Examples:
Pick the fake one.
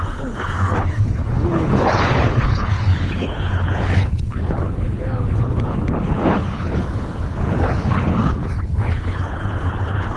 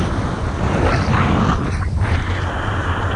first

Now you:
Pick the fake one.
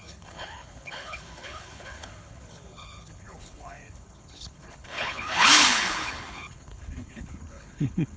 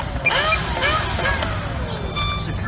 first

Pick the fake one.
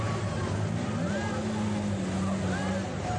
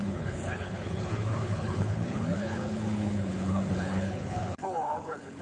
second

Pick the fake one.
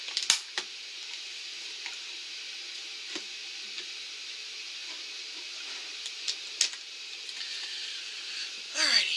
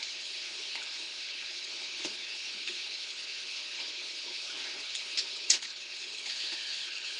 second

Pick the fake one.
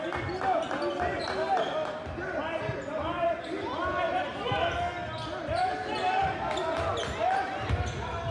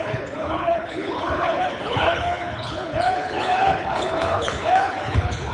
second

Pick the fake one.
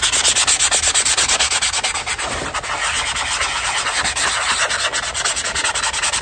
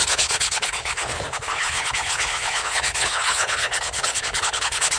second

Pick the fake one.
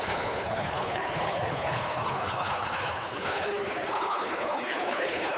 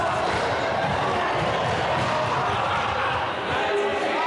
first